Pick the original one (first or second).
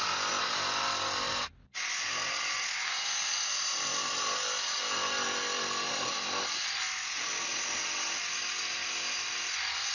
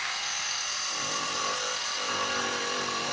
first